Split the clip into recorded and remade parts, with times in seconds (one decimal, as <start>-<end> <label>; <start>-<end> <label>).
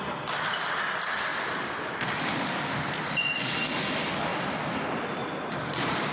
0.0-6.1 recorded